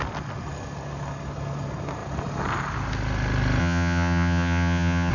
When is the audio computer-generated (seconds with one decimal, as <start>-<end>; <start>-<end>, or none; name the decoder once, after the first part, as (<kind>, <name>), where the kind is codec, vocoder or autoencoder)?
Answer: 3.6-5.1 (vocoder, HiFi-GAN)